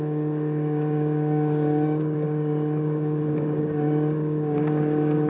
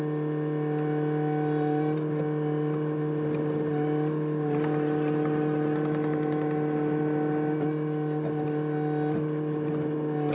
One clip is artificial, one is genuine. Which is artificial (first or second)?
first